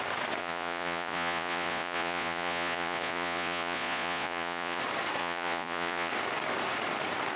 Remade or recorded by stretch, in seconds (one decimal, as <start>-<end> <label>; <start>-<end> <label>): 0.0-0.4 recorded; 0.4-4.8 remade; 4.8-5.2 recorded; 5.2-6.1 remade; 6.1-7.4 recorded